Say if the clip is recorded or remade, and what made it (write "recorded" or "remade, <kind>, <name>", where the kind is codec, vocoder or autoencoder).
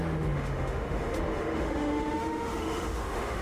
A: remade, autoencoder, DAC-VAE